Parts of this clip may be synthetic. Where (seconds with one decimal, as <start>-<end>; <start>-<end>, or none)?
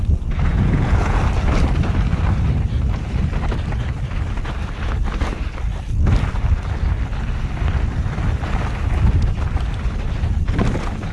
0.5-1.2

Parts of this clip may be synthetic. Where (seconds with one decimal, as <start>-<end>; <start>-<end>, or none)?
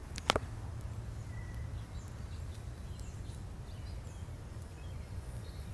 4.5-5.7